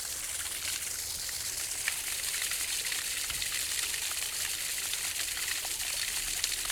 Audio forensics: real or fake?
real